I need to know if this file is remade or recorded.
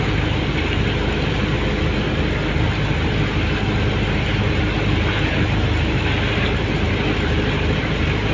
recorded